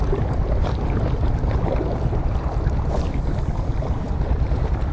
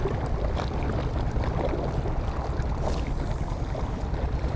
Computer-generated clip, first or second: first